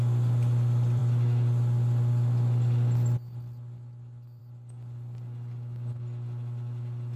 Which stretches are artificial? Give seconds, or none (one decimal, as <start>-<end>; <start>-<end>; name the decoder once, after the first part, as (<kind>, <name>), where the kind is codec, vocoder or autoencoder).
none